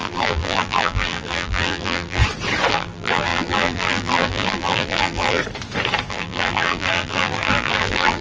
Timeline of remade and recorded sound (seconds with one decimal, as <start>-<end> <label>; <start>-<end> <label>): 0.0-2.2 remade; 2.2-2.7 recorded; 2.7-5.4 remade; 5.4-6.1 recorded; 6.1-8.2 remade